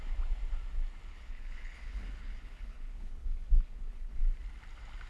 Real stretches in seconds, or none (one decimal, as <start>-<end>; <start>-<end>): 0.0-1.1; 4.2-5.1